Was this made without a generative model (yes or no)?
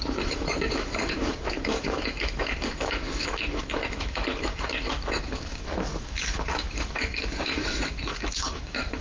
no